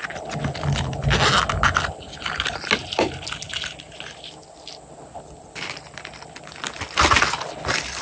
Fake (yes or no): no